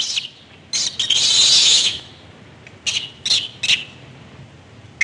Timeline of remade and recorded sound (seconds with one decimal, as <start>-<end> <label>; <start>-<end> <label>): 0.0-1.6 recorded; 1.6-2.1 remade; 2.1-5.0 recorded